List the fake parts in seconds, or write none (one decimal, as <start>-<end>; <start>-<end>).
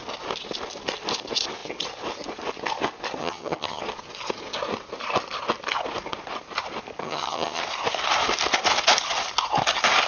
3.2-3.8; 7.0-7.6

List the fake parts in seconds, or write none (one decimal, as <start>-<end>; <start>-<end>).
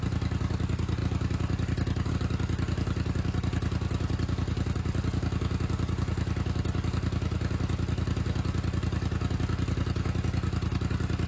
none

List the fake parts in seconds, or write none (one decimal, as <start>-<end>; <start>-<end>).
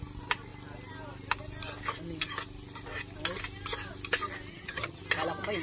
4.5-5.0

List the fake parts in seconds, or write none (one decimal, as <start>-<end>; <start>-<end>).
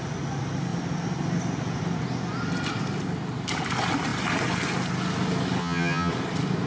5.6-6.1